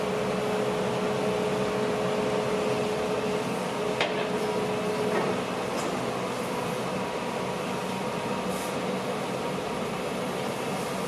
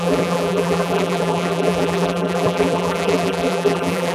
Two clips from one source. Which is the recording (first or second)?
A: first